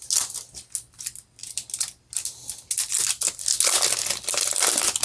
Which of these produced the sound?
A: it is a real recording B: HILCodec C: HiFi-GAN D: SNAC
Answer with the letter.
A